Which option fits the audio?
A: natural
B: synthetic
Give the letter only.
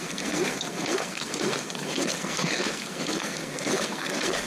B